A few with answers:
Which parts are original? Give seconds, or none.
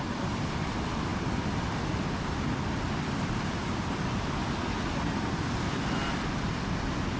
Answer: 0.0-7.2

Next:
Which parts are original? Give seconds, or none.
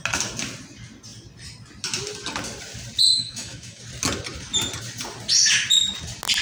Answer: 0.0-3.1; 3.8-6.4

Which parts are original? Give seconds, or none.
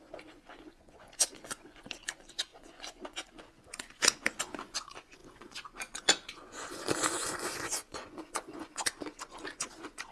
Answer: none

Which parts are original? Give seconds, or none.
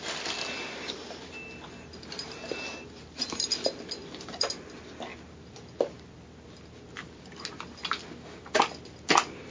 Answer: 0.0-9.5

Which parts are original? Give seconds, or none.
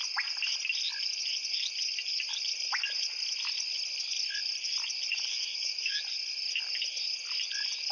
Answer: 0.0-5.3; 6.0-7.9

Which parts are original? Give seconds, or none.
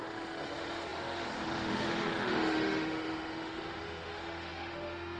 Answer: none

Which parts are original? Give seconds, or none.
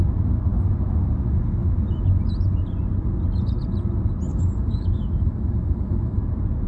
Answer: 0.0-4.3; 6.2-6.7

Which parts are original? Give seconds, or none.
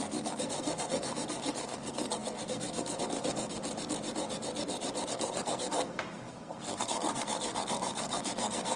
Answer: 3.6-5.1